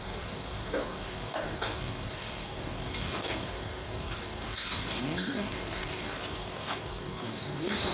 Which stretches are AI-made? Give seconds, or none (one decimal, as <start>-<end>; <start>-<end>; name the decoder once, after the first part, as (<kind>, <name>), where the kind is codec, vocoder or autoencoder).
0.0-7.9 (codec, DAC)